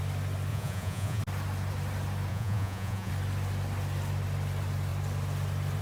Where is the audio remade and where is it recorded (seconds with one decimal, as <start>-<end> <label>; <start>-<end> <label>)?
0.0-0.5 recorded; 0.5-1.2 remade; 1.2-2.3 recorded; 2.3-3.1 remade; 3.1-5.8 recorded